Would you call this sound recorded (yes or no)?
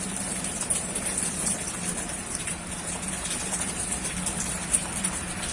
no